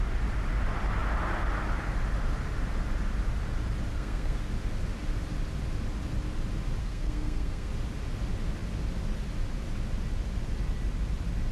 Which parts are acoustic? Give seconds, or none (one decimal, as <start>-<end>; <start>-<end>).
0.0-3.9; 4.4-6.8; 7.7-11.5